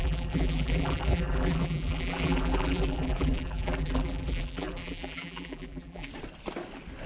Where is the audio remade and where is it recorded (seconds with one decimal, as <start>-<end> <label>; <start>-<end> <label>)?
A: 0.0-6.1 remade; 6.1-7.1 recorded